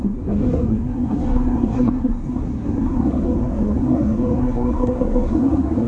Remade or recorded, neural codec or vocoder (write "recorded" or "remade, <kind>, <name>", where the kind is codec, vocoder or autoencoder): remade, codec, SNAC